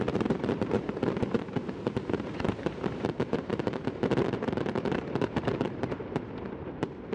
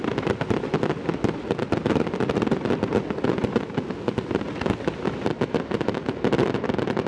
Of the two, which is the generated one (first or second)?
first